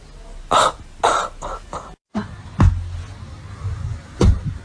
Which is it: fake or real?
real